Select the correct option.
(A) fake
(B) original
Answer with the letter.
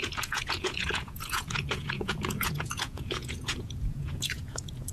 A